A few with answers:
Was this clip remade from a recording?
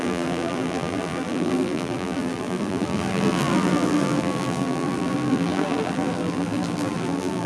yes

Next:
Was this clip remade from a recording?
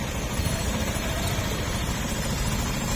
yes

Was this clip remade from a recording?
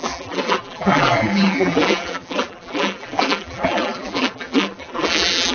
yes